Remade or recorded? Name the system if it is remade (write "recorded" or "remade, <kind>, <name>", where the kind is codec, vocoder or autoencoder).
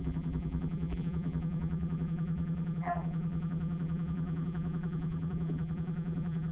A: remade, vocoder, BigVGAN v2